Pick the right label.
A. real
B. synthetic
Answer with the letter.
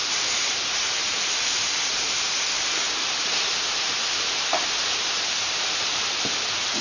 B